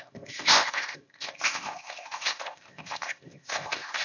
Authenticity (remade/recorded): remade